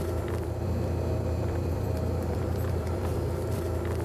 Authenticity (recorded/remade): remade